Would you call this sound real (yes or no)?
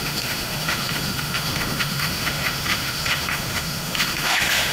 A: no